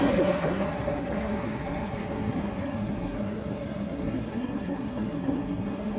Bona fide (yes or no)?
no